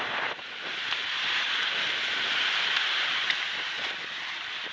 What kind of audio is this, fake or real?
real